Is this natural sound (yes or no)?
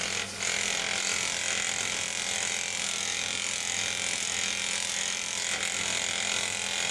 yes